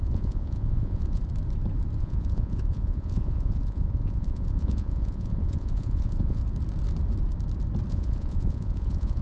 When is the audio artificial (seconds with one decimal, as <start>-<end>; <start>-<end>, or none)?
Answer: 0.0-1.2; 2.0-6.4; 7.9-9.2